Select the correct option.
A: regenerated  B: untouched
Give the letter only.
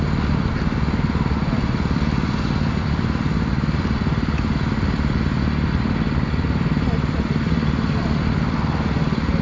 B